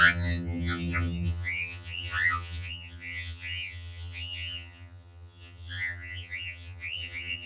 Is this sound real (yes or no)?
no